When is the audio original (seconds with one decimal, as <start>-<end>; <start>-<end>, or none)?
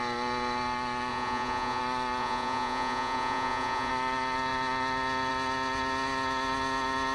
0.0-1.1; 1.8-2.2; 3.9-7.1